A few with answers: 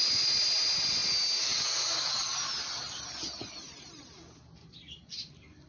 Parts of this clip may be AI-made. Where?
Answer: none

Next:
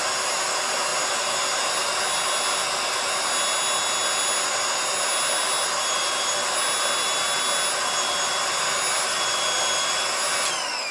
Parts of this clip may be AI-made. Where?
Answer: none